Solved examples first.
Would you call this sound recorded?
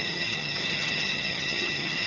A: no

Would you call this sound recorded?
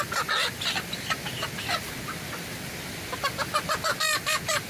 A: yes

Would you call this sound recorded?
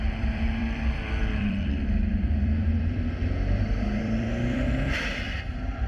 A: no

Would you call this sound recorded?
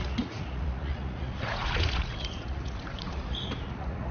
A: no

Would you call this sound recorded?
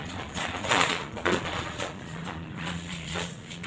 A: no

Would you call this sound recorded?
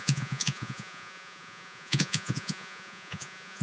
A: no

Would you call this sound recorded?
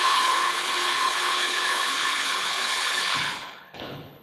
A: no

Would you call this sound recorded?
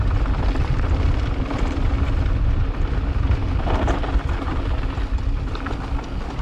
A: yes